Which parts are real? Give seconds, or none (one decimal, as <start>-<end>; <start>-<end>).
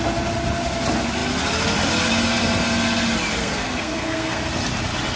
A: 0.0-3.4; 4.4-5.2